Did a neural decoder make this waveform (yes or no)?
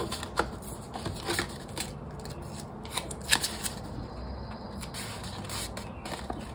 no